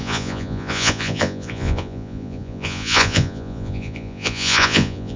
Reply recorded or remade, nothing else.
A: remade